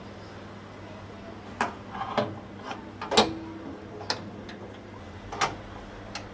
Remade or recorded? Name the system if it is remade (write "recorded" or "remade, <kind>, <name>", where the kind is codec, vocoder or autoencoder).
recorded